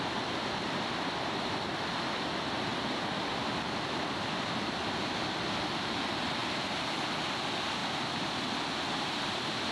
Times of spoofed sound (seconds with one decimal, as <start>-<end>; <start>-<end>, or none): none